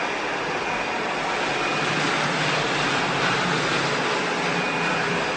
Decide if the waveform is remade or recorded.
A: recorded